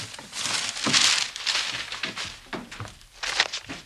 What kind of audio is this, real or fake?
real